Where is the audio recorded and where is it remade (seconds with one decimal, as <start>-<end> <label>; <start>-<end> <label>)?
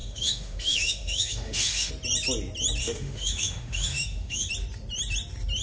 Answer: 0.0-1.9 remade; 1.9-2.8 recorded; 2.8-4.5 remade; 4.5-5.6 recorded